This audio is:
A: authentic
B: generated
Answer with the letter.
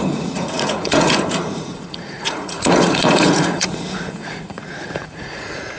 B